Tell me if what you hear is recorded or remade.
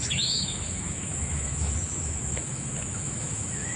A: remade